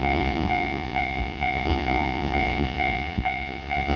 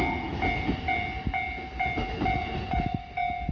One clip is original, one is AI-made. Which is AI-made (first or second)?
first